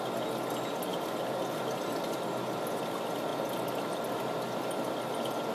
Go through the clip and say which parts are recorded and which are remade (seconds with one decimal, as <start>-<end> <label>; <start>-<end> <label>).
0.0-5.5 recorded